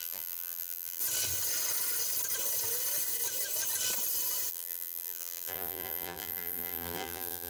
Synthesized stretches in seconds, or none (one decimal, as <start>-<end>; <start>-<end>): 0.0-1.0; 4.5-7.5